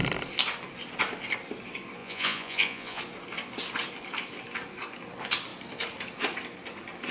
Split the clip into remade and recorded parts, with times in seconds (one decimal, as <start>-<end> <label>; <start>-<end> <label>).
0.0-2.0 recorded; 2.0-3.0 remade; 3.0-7.1 recorded